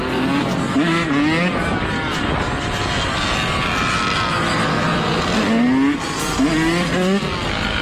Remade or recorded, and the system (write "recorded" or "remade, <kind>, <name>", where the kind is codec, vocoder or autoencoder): recorded